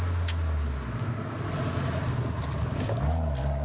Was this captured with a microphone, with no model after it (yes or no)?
yes